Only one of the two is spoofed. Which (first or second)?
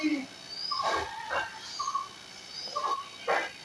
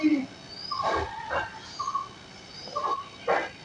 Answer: second